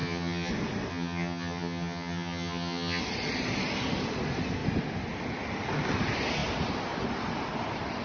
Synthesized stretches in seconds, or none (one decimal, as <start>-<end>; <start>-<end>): 0.0-0.5; 0.9-3.0